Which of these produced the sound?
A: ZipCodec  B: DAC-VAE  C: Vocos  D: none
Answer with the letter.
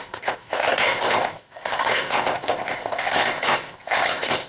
A